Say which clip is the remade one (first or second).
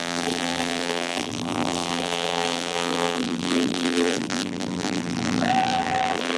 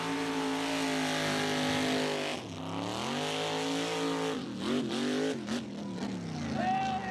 first